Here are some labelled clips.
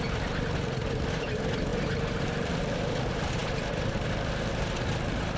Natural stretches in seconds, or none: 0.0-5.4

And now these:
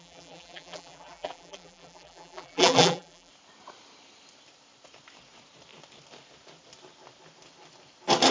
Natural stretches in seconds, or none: 3.3-8.3

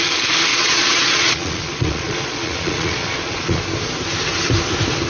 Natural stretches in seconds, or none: 0.0-0.5; 3.6-5.1

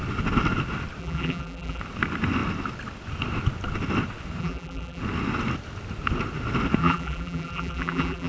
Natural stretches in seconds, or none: 0.0-1.0; 1.8-4.4; 5.0-6.8

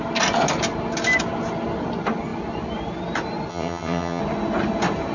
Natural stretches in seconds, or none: 0.0-3.5; 4.2-5.1

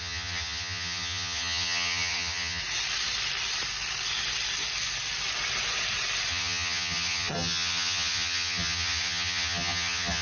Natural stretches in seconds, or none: 2.6-6.3

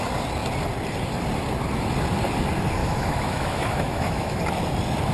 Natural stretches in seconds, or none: 0.0-2.8; 4.4-5.1

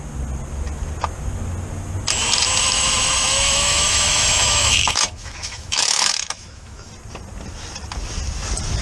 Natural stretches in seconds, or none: 0.0-2.6; 6.9-8.8